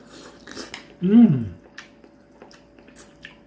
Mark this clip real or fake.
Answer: real